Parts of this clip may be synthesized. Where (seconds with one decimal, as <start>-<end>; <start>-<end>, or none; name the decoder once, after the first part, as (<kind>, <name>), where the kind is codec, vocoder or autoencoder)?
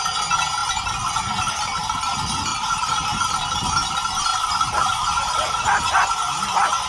2.5-3.2 (vocoder, BigVGAN v2); 4.3-5.8